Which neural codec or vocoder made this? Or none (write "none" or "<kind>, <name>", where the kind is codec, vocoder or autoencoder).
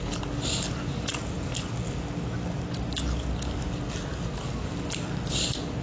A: none